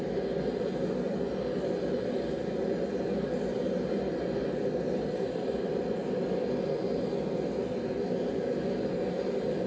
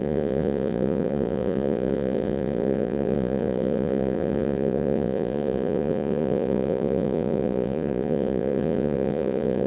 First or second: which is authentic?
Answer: first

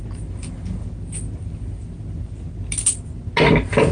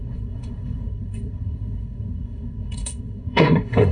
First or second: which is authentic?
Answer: first